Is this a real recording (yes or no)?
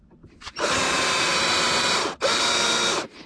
yes